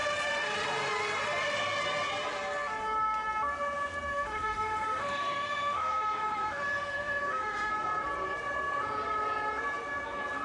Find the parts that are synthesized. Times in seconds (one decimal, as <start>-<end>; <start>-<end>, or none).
4.1-7.7